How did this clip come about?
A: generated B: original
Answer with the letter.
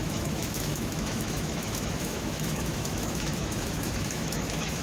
A